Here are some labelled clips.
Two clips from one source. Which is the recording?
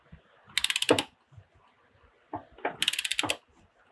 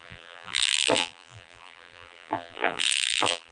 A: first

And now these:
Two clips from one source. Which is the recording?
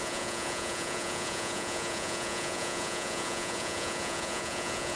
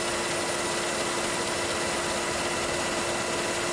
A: second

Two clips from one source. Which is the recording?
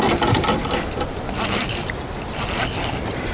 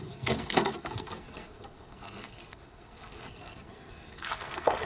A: first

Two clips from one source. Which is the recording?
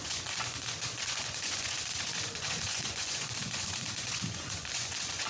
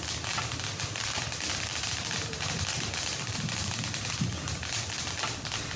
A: second